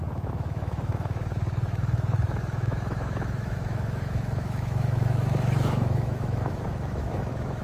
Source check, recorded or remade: remade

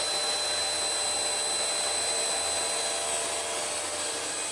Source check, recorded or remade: recorded